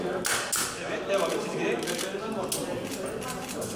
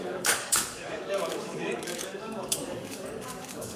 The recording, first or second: first